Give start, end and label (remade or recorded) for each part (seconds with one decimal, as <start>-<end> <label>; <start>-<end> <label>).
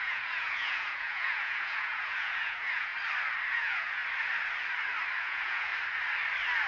0.0-2.9 remade; 2.9-3.5 recorded; 3.5-4.0 remade; 4.0-5.2 recorded; 5.2-5.7 remade; 5.7-6.7 recorded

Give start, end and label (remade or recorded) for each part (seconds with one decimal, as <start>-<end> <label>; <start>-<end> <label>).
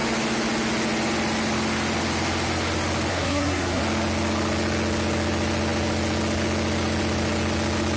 0.0-3.1 recorded; 3.1-3.8 remade; 3.8-8.0 recorded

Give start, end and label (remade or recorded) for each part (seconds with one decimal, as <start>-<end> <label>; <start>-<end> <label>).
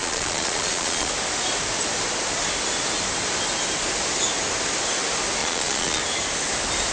0.0-1.1 remade; 1.1-5.4 recorded; 5.4-6.0 remade; 6.0-6.9 recorded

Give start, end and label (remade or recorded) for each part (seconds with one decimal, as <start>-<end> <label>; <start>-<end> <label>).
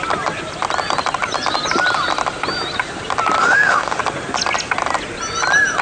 0.0-3.4 recorded; 3.4-4.0 remade; 4.0-5.8 recorded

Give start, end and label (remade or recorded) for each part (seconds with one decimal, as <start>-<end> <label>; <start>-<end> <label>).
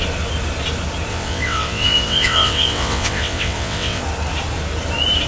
0.0-1.1 recorded; 1.1-4.0 remade; 4.0-5.3 recorded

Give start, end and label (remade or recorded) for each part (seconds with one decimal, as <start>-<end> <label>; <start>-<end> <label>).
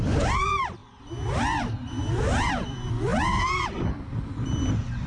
0.0-5.1 recorded